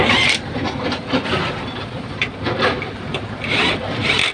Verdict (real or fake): real